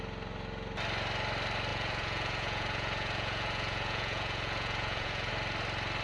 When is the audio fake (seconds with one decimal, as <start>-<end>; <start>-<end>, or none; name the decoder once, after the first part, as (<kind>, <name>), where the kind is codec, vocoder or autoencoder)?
1.7-5.3 (vocoder, Vocos)